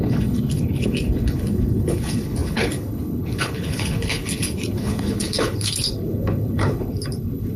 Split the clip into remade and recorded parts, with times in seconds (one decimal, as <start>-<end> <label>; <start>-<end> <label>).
0.0-7.6 remade

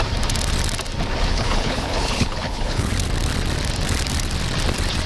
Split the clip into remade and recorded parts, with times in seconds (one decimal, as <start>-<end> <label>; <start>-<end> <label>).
0.0-1.3 recorded; 1.3-2.9 remade; 2.9-5.1 recorded